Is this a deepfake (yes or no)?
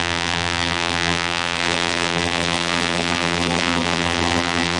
yes